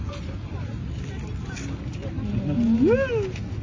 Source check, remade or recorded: recorded